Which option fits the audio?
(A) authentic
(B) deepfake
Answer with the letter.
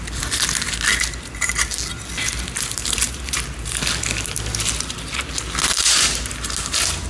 A